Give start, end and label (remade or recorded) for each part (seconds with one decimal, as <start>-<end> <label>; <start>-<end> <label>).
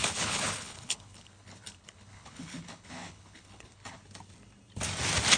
0.0-4.0 remade; 4.0-5.4 recorded